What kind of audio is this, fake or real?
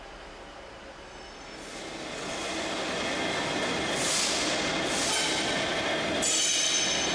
real